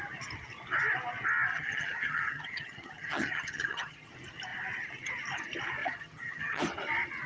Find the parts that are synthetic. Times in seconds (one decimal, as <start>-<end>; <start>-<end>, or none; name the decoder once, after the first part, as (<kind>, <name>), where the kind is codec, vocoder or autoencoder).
1.5-4.1 (vocoder, HiFi-GAN); 5.8-6.6